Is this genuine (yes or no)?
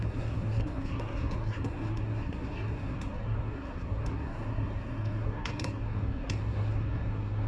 no